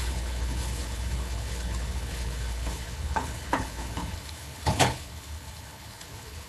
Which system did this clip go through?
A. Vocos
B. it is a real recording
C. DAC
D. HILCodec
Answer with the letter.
D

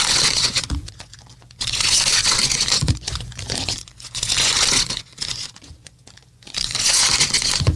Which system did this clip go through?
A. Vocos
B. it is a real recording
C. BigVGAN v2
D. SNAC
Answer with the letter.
A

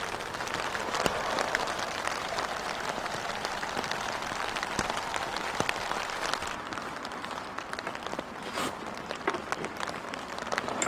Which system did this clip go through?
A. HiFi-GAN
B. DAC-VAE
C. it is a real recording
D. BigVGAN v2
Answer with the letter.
C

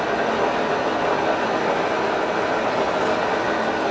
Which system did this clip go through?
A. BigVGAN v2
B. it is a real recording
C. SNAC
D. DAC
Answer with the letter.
B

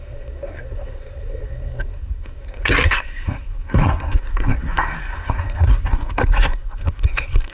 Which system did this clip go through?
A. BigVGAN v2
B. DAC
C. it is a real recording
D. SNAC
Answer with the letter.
D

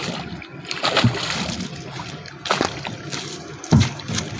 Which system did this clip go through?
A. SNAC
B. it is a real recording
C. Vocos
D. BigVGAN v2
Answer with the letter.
B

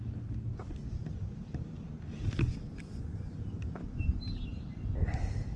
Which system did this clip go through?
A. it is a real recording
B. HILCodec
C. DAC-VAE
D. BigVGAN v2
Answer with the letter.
A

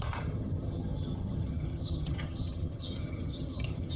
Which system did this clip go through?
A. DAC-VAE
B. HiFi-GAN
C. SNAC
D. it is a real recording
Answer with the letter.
B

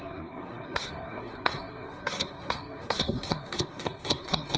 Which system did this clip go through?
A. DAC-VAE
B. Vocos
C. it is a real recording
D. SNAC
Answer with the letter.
D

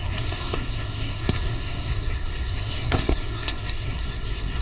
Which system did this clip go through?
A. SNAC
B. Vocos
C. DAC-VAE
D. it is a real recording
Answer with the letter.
A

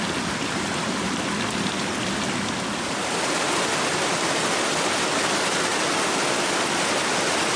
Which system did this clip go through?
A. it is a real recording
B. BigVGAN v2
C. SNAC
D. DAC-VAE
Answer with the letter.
A